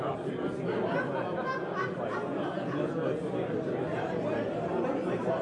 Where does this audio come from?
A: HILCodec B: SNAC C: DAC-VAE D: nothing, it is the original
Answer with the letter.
D